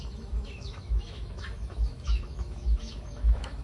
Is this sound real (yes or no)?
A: no